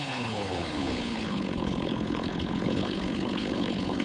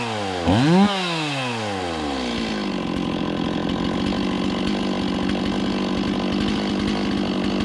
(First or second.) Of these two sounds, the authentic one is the second